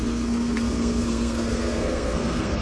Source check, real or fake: fake